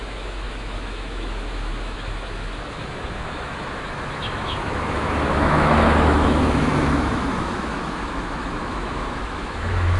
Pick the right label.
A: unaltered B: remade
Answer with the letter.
B